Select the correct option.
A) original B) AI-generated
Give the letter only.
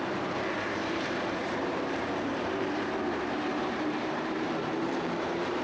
B